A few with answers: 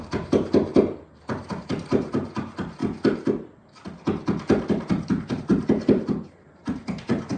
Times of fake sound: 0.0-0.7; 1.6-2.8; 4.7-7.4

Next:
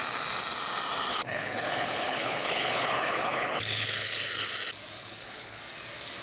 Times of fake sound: 1.1-4.5; 5.0-5.6

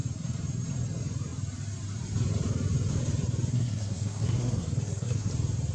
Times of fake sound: 3.5-5.3

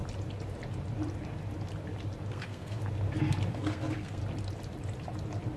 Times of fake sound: 2.3-2.8; 3.5-4.2